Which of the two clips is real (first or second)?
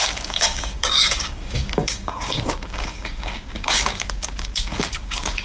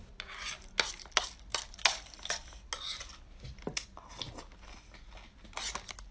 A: second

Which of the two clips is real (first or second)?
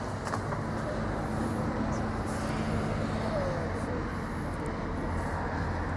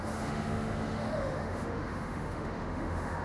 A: first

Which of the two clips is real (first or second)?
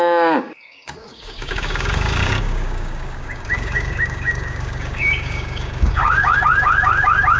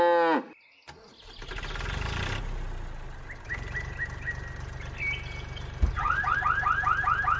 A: second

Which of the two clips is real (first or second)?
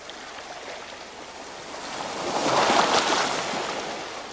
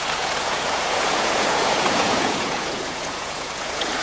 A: first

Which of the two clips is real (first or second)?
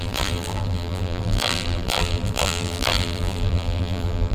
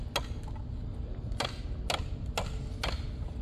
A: second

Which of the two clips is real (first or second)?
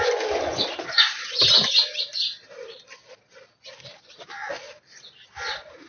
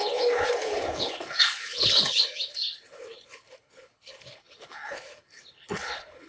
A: first